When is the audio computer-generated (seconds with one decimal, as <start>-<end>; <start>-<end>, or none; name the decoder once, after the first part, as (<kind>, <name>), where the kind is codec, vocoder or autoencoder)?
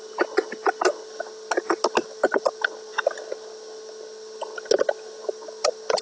none